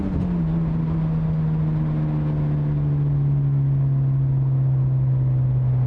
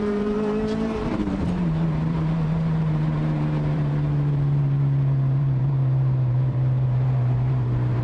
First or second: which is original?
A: first